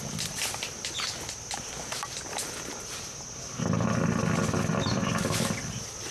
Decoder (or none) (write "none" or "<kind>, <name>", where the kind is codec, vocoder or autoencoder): none